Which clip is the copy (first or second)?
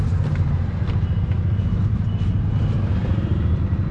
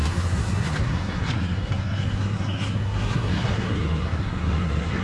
second